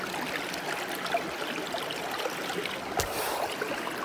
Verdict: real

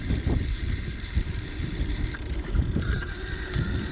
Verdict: fake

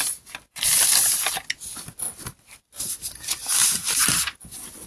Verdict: real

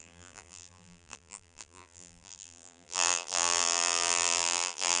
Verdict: fake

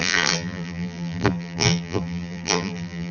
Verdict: fake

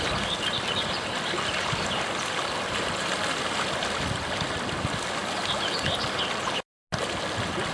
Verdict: real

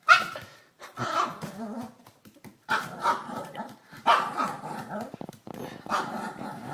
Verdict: fake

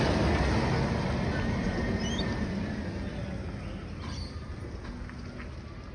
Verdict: real